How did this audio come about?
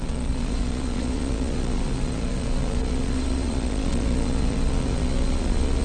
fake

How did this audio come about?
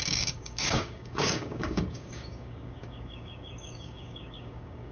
fake